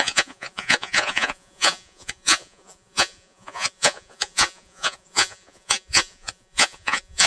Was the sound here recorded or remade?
remade